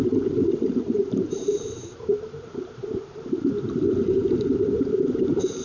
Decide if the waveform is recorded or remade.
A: remade